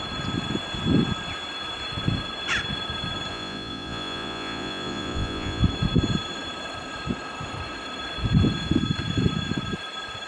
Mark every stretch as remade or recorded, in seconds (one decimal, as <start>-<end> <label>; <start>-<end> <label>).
0.0-3.3 recorded; 3.3-5.6 remade; 5.6-10.3 recorded